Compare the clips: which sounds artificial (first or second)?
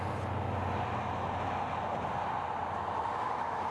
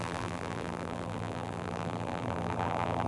second